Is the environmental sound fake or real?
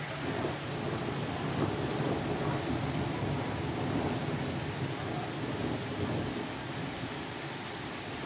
real